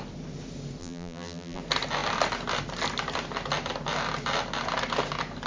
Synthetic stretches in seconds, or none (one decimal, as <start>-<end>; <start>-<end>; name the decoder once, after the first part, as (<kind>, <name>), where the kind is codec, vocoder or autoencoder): 0.8-1.6 (vocoder, BigVGAN v2)